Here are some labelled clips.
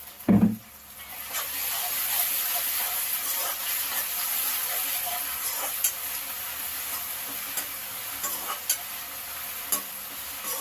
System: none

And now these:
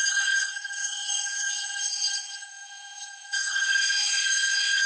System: codec, SNAC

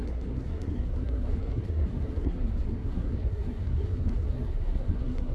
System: codec, SNAC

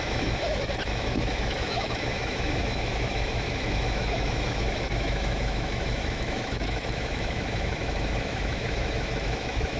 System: autoencoder, DAC-VAE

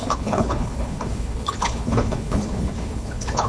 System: codec, HILCodec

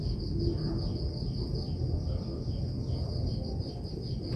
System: none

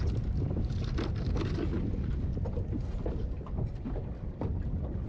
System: none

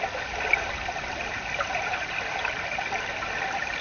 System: none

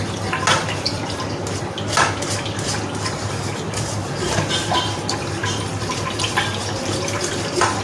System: none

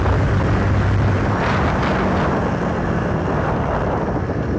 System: none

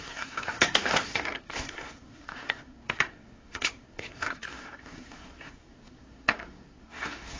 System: codec, SNAC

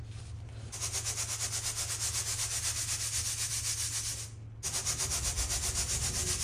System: none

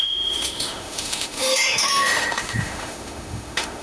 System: autoencoder, DAC-VAE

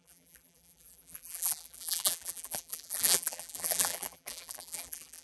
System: vocoder, BigVGAN v2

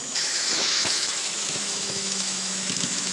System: autoencoder, DAC-VAE